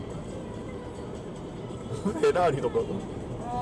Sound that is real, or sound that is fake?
fake